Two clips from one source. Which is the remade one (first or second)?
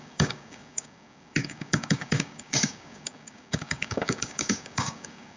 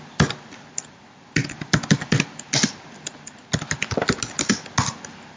first